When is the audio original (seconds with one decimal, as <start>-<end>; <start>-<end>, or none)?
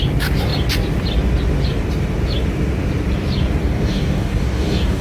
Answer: 0.0-3.6